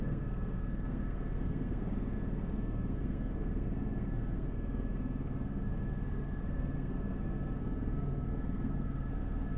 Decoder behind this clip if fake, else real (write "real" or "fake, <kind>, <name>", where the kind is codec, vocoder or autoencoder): fake, codec, SNAC